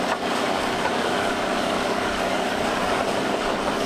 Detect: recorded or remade remade